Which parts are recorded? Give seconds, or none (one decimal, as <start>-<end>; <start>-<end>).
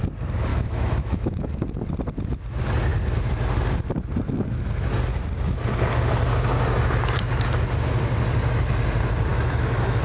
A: 0.0-0.5; 1.5-9.3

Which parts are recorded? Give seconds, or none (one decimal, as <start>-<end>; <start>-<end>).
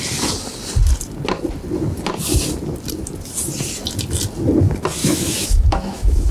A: 0.0-5.0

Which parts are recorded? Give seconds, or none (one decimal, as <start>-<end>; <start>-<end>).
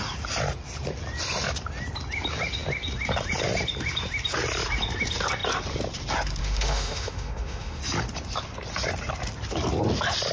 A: 0.0-6.4; 7.8-10.3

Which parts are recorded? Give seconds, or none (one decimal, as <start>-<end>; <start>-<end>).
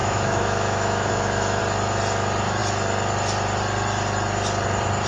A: 1.6-5.1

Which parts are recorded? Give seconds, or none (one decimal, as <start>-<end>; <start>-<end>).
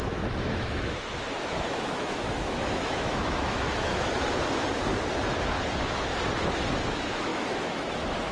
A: 3.9-6.8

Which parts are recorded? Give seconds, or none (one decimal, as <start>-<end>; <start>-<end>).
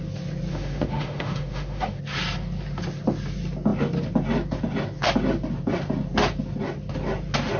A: 0.0-0.5; 2.0-7.6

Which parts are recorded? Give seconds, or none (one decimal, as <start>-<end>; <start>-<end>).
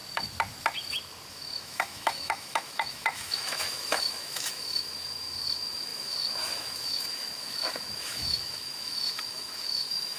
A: 0.0-1.3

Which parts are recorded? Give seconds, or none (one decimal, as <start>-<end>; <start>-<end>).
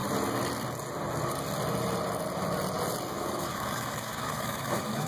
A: 0.0-3.1